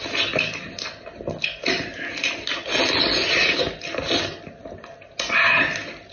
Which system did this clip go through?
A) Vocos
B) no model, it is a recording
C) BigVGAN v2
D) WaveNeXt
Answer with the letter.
B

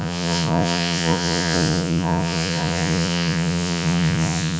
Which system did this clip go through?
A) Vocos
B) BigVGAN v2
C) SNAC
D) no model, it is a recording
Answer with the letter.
A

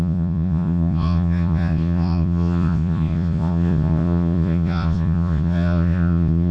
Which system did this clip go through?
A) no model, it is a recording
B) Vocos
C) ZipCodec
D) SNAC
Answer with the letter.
B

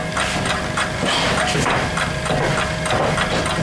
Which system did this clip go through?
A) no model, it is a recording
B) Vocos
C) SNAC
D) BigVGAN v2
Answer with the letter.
A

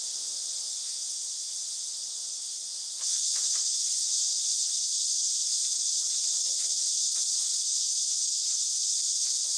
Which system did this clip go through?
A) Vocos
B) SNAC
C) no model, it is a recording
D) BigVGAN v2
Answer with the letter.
A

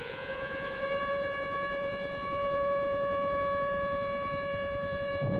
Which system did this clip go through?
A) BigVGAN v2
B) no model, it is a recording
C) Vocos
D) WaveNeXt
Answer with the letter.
C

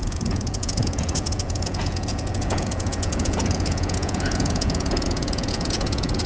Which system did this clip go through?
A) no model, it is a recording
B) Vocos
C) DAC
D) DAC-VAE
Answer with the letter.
B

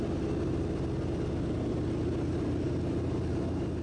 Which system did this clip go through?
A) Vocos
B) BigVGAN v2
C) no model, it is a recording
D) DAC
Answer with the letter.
C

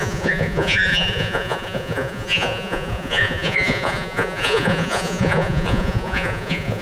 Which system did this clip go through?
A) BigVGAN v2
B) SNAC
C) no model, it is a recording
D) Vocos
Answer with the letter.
D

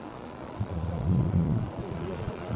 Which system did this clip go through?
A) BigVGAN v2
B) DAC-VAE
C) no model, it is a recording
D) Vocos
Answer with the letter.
D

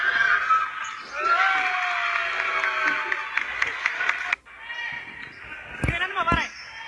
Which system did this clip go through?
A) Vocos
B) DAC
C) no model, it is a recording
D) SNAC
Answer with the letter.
C